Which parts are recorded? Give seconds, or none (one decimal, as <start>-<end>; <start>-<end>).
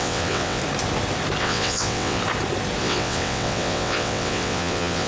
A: 0.6-1.4; 2.2-2.8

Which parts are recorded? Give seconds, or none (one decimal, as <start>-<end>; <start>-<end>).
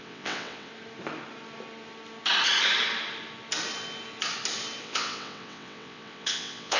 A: 0.7-4.8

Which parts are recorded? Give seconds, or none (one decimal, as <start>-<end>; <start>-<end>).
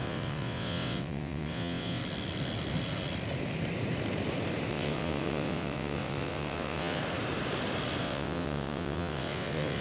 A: 2.0-4.7; 7.0-8.0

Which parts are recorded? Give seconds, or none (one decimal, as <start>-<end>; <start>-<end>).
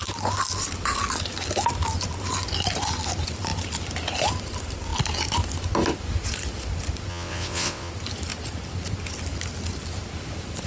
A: 0.0-7.1; 7.9-10.7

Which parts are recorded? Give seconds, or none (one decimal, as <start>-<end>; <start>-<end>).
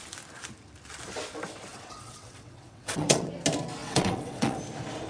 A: 0.0-1.7; 3.3-3.8; 4.6-5.1